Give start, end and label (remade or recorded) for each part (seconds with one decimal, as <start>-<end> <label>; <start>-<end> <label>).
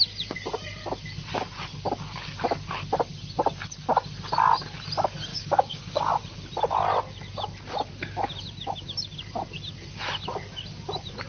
0.0-5.3 recorded; 5.3-6.1 remade; 6.1-11.3 recorded